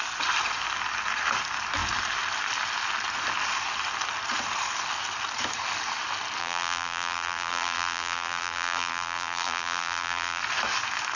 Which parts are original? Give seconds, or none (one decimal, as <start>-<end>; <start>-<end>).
0.0-6.4; 10.4-11.2